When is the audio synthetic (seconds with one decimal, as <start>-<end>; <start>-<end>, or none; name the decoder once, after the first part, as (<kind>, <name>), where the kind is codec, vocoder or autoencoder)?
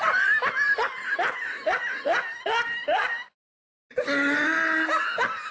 none